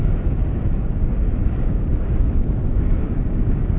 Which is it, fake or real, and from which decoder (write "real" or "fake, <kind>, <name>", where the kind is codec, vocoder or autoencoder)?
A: fake, codec, DAC